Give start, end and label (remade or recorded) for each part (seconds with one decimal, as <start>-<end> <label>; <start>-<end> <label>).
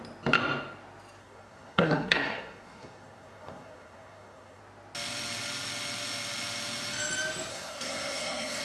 0.0-1.2 recorded; 1.2-4.6 remade; 4.6-7.5 recorded; 7.5-8.6 remade